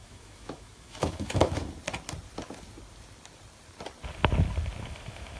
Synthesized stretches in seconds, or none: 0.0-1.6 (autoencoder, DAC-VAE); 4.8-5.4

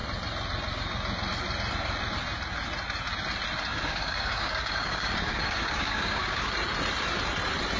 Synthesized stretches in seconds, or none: 3.7-6.5 (codec, DAC)

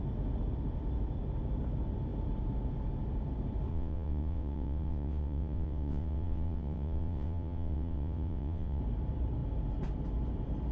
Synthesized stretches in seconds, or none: 3.7-8.8 (vocoder, WaveNeXt)